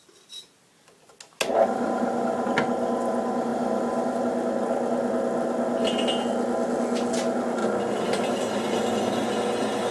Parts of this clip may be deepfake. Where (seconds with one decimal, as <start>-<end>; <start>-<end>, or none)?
3.5-4.2; 7.6-8.9